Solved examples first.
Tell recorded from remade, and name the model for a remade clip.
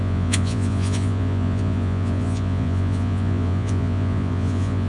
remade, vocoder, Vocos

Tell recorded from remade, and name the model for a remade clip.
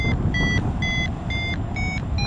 recorded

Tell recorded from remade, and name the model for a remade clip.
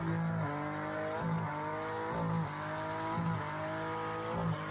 recorded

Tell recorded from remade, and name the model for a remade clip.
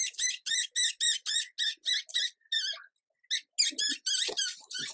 recorded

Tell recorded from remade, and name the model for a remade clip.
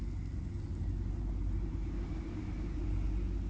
recorded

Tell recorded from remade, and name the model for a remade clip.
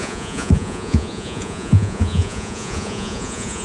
remade, vocoder, Vocos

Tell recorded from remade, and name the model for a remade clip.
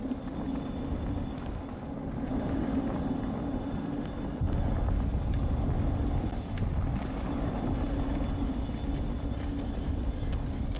recorded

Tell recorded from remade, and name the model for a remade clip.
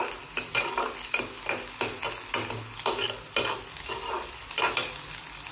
recorded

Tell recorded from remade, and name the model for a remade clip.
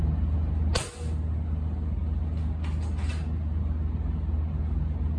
recorded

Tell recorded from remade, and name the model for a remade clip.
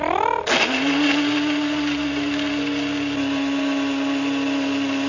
recorded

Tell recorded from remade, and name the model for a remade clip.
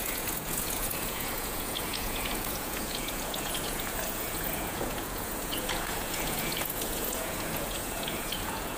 remade, vocoder, Vocos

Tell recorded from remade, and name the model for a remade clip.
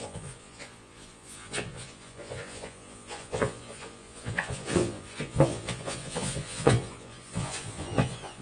remade, vocoder, Vocos